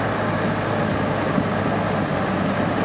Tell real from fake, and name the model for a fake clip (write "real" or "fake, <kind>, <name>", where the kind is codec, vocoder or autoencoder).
real